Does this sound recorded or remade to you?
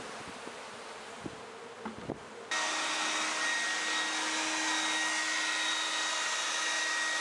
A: recorded